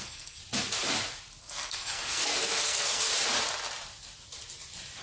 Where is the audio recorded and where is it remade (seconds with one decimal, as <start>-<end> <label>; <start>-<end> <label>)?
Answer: 0.0-0.4 remade; 0.4-1.4 recorded; 1.4-3.1 remade; 3.1-5.0 recorded